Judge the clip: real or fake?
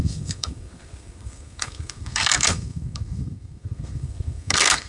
fake